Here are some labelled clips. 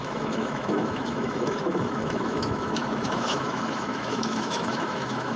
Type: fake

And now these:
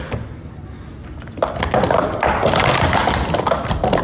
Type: real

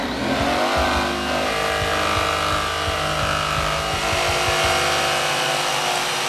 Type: real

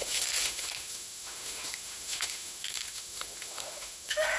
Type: fake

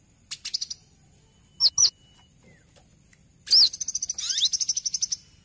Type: real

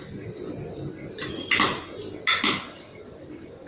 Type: real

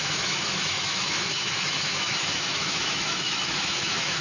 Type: fake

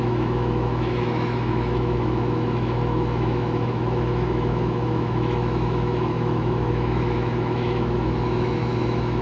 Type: fake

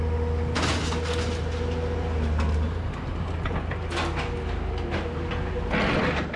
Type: real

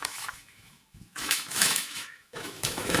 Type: fake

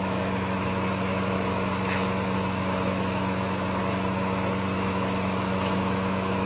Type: fake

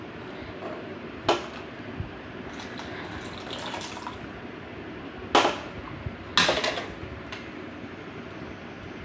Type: real